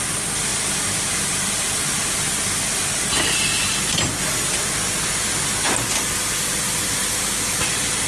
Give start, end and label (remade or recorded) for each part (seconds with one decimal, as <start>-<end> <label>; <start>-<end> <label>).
0.0-0.5 recorded; 0.5-2.9 remade; 2.9-8.1 recorded